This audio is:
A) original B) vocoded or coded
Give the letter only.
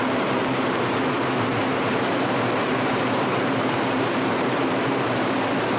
B